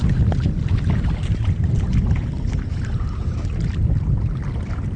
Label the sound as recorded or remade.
recorded